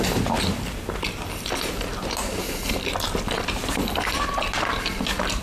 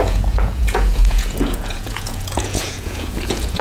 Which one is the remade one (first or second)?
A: second